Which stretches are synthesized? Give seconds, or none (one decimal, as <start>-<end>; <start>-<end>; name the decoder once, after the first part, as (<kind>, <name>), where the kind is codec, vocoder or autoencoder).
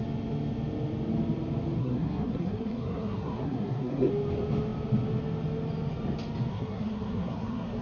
1.8-4.1 (codec, SNAC); 6.5-7.8